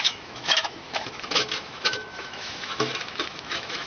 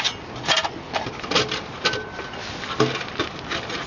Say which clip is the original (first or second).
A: second